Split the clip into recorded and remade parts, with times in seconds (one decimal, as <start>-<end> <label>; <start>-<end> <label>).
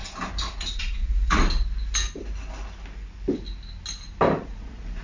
0.0-0.5 recorded; 0.5-1.4 remade; 1.4-4.4 recorded; 4.4-5.0 remade